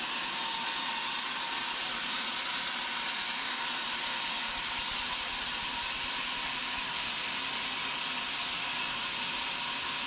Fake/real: real